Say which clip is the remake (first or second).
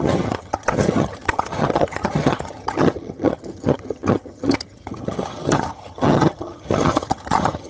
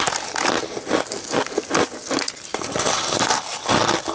first